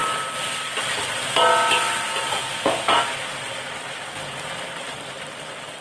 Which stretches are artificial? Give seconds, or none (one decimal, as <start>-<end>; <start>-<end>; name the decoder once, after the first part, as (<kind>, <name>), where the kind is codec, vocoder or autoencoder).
none